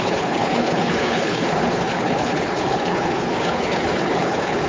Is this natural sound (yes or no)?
no